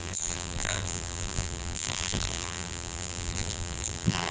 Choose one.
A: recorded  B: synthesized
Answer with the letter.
B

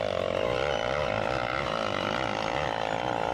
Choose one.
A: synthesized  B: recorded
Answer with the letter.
B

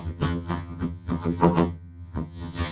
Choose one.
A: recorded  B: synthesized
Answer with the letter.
B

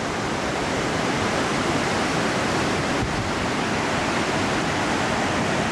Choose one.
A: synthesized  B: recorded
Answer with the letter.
B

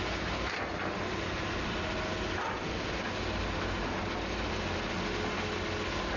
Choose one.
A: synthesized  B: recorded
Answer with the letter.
B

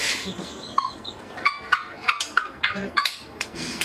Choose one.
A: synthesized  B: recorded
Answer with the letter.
A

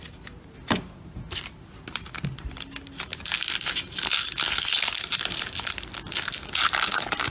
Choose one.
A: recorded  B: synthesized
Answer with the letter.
A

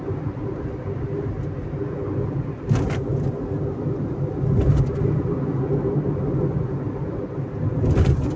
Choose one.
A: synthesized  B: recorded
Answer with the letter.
B